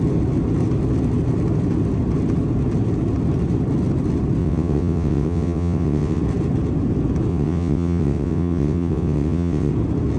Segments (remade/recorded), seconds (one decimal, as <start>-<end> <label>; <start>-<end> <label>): 0.0-4.4 recorded; 4.4-6.2 remade; 6.2-7.3 recorded; 7.3-9.7 remade; 9.7-10.2 recorded

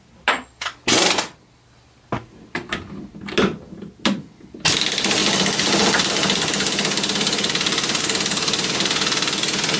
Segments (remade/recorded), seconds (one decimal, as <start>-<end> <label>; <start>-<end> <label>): 0.0-9.8 recorded

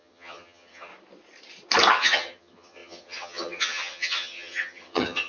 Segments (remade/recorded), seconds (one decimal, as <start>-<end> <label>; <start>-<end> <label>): 0.0-0.9 remade; 0.9-1.9 recorded; 1.9-5.3 remade

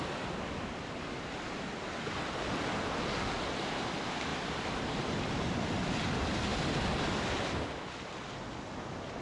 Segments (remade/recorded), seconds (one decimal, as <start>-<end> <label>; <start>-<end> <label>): 0.0-4.3 recorded; 4.3-5.4 remade; 5.4-9.2 recorded

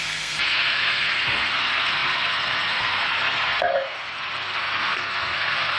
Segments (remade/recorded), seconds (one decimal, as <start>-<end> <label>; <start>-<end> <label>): 0.0-5.8 remade

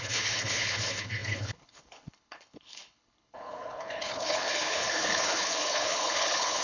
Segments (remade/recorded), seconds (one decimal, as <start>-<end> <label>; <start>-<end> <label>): 0.0-6.6 remade

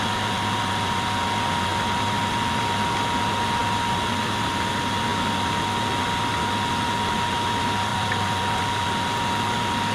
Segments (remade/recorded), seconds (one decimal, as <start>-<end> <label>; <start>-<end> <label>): 0.0-9.9 recorded

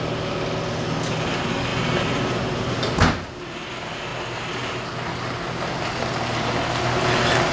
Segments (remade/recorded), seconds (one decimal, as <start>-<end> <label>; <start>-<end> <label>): 0.0-7.5 recorded